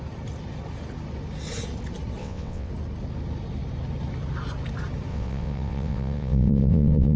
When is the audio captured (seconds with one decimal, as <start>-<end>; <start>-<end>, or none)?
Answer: 0.0-2.2; 2.7-5.1